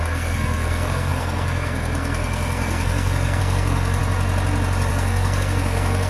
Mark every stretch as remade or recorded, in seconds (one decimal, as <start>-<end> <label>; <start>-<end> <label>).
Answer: 0.0-4.0 remade; 4.0-4.9 recorded; 4.9-6.1 remade